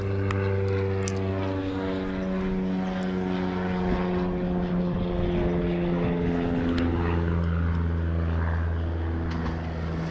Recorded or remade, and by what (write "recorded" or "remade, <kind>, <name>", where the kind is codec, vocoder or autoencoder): recorded